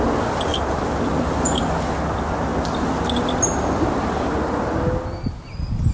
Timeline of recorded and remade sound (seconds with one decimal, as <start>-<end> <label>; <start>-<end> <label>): 0.0-5.9 recorded